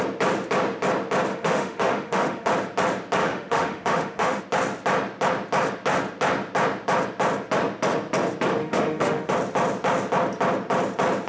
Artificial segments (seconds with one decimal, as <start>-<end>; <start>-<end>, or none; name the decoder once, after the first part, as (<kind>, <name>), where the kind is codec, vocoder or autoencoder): 1.3-2.5 (autoencoder, DAC-VAE); 3.2-4.4; 8.6-9.3